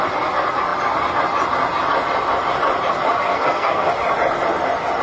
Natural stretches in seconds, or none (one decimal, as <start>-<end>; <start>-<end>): 0.0-3.3; 3.9-5.0